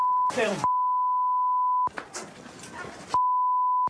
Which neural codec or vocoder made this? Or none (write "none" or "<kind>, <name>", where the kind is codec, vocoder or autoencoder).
none